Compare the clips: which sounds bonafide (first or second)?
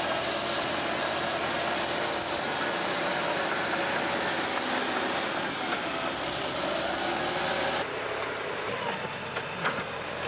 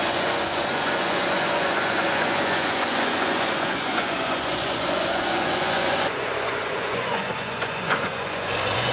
first